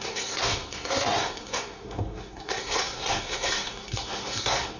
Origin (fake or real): fake